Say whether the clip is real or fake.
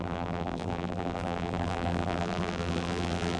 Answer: fake